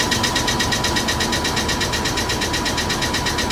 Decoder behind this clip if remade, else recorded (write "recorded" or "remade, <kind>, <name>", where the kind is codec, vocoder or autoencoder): recorded